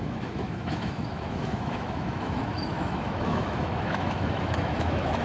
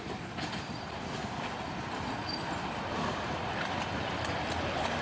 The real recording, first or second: second